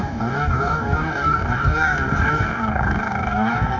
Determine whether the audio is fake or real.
fake